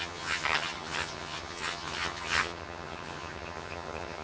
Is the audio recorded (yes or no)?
no